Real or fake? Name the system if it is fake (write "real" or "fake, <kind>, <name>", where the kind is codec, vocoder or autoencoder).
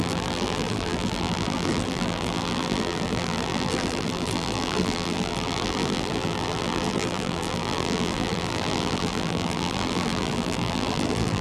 fake, vocoder, BigVGAN v2